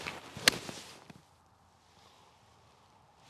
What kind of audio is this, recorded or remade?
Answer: recorded